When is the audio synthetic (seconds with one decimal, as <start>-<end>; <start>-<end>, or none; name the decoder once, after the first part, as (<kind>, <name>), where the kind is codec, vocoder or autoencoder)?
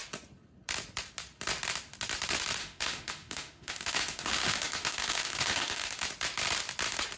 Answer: 2.6-6.0 (autoencoder, DAC-VAE)